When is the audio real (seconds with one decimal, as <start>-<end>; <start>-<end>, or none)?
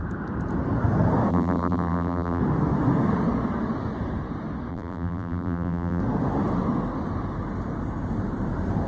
0.0-1.3; 2.4-4.7; 6.0-8.9